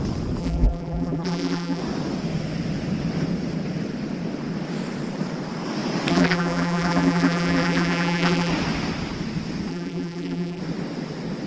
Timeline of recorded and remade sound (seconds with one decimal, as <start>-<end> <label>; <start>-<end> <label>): 0.0-0.4 recorded; 0.4-1.8 remade; 1.8-6.1 recorded; 6.1-8.5 remade; 8.5-9.7 recorded; 9.7-10.6 remade; 10.6-11.5 recorded